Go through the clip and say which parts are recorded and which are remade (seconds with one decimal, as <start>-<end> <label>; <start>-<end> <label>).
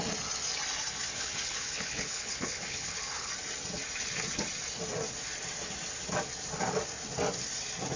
0.0-1.1 recorded; 1.1-3.3 remade; 3.3-8.0 recorded